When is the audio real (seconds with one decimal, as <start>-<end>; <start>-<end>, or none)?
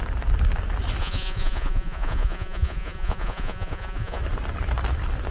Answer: 0.0-1.0; 4.2-5.3